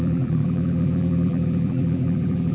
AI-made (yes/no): yes